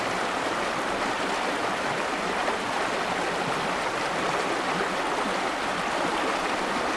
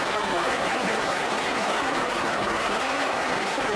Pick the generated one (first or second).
second